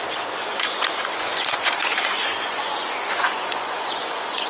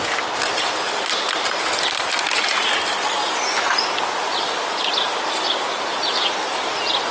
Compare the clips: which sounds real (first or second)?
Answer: second